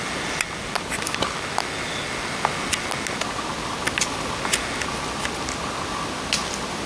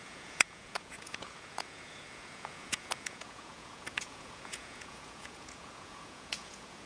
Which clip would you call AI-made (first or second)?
second